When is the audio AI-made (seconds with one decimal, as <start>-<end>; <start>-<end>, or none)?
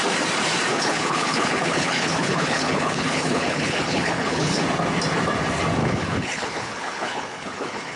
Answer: 0.7-4.6; 5.8-8.0